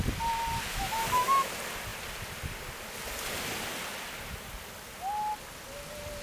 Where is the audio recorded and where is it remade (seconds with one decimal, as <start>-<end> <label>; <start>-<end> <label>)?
0.0-0.7 recorded; 0.7-1.5 remade; 1.5-6.2 recorded